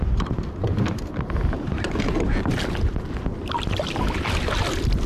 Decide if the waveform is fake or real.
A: real